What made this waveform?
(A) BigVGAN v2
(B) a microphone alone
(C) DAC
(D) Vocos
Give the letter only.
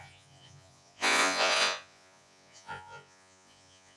D